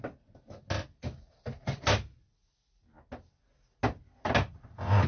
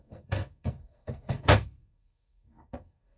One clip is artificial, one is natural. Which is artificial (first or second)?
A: second